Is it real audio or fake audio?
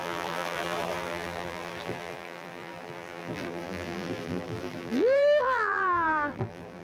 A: fake